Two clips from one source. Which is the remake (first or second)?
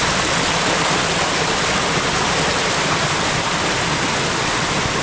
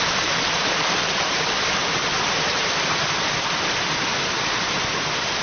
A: second